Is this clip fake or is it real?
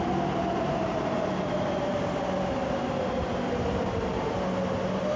real